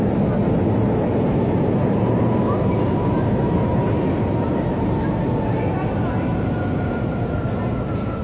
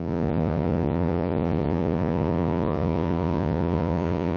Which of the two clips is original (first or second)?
first